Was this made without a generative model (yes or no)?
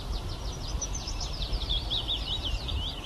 no